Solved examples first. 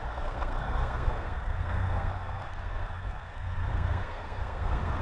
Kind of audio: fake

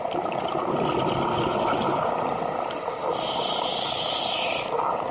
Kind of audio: real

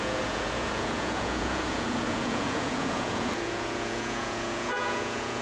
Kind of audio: fake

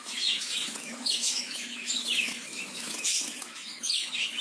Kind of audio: fake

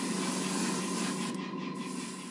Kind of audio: real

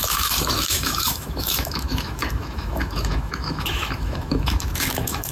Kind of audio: fake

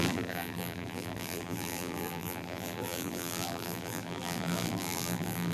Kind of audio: fake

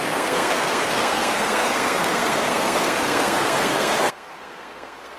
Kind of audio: fake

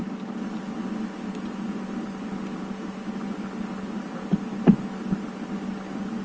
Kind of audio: real